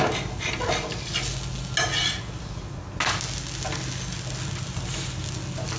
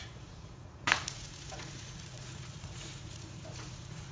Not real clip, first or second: second